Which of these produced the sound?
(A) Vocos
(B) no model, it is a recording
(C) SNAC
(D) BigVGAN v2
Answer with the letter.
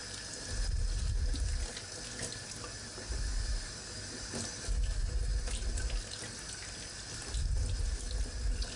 B